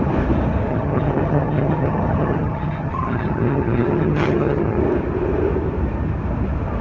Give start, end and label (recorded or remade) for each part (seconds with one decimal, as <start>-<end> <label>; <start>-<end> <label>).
0.0-0.7 recorded; 0.7-4.8 remade; 4.8-6.8 recorded